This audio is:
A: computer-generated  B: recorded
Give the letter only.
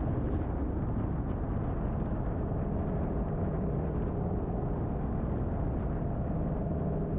B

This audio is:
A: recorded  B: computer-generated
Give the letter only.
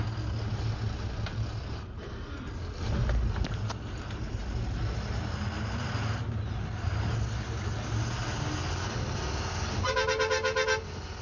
A